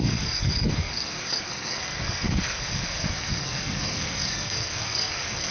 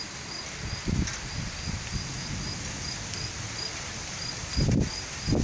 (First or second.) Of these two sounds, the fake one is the first